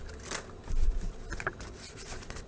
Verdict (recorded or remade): recorded